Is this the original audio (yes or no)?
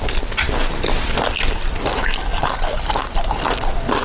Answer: yes